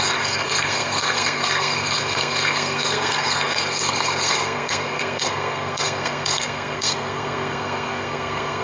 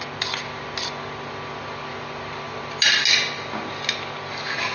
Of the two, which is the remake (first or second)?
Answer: first